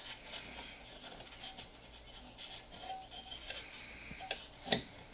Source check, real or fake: real